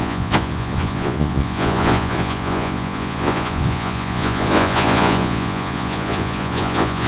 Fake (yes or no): yes